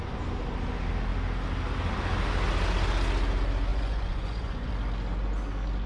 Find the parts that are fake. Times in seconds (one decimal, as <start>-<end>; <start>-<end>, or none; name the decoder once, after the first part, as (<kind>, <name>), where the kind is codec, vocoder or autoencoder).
3.7-4.7 (vocoder, Vocos)